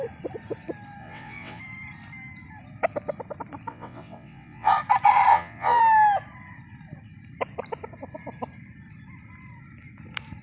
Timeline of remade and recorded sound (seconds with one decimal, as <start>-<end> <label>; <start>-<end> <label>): 0.0-1.0 recorded; 1.0-1.6 remade; 1.6-3.7 recorded; 3.7-4.7 remade; 4.7-5.3 recorded; 5.3-5.8 remade; 5.8-10.4 recorded